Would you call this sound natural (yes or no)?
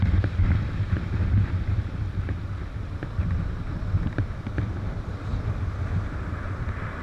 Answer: yes